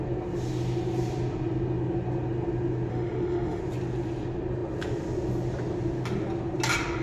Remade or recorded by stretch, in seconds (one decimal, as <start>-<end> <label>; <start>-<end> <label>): 0.0-2.9 recorded; 2.9-3.6 remade; 3.6-7.0 recorded